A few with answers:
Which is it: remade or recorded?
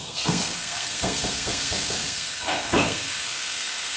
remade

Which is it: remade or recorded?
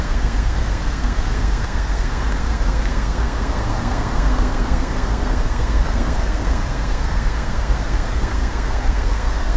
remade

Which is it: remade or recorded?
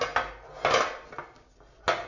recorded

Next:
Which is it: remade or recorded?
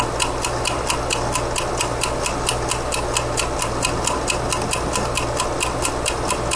recorded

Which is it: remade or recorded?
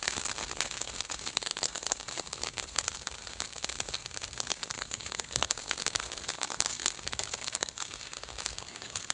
remade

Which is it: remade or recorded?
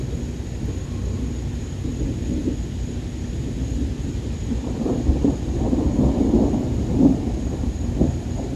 recorded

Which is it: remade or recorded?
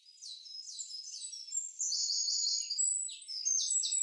recorded